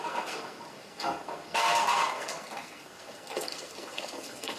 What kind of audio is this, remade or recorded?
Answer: remade